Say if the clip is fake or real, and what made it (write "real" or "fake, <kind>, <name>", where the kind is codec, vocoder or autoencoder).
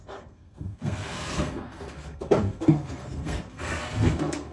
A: fake, codec, SNAC